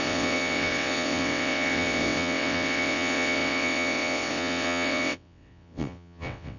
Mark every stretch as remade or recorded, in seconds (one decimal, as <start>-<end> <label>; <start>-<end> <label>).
0.0-6.6 remade